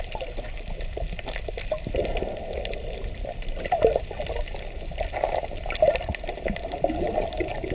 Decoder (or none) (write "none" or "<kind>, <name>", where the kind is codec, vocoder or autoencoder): vocoder, BigVGAN v2